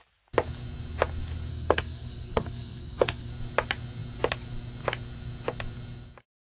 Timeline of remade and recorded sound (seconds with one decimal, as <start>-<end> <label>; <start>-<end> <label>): 0.0-1.5 recorded; 1.5-3.3 remade; 3.3-6.5 recorded